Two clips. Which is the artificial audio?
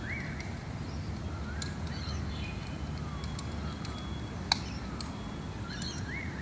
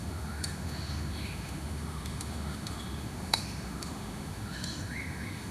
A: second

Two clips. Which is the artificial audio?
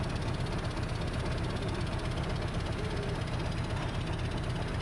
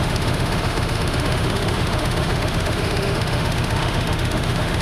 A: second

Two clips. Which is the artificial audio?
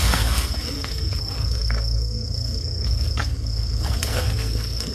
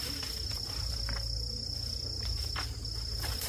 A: first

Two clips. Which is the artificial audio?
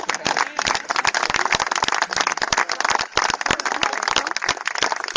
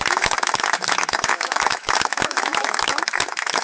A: second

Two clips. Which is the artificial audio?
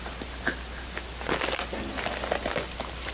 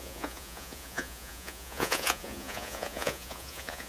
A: second